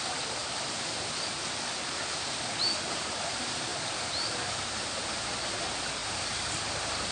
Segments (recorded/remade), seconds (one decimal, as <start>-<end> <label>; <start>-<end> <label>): 0.0-0.4 remade; 0.4-2.5 recorded; 2.5-7.1 remade

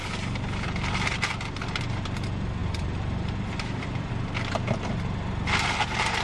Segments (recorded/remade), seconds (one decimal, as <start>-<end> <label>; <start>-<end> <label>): 0.0-2.6 recorded; 2.6-4.1 remade; 4.1-6.2 recorded

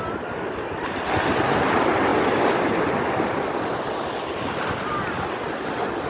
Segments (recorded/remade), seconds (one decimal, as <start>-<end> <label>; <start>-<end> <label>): 0.0-6.1 recorded

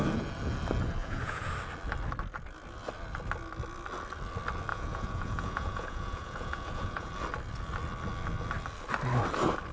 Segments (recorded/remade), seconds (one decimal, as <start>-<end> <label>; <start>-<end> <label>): 0.0-1.0 recorded; 1.0-1.5 remade; 1.5-4.7 recorded; 4.7-7.1 remade; 7.1-9.7 recorded

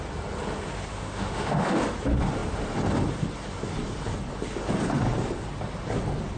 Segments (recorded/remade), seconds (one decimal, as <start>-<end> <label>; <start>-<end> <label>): 0.0-0.9 recorded; 0.9-1.8 remade; 1.8-6.4 recorded

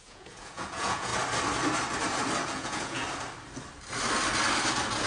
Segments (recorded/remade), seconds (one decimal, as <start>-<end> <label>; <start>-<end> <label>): 0.0-1.1 remade; 1.1-2.4 recorded; 2.4-3.0 remade; 3.0-5.1 recorded

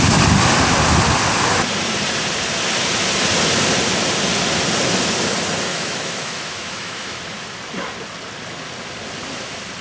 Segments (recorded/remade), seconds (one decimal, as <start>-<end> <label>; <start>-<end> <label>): 0.0-5.7 recorded; 5.7-7.2 remade; 7.2-9.8 recorded

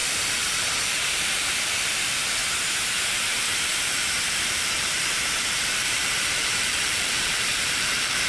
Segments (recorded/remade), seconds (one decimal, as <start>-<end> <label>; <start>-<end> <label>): 0.0-2.4 remade; 2.4-3.1 recorded; 3.1-8.3 remade